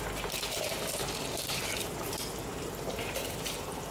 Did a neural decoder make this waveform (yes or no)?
no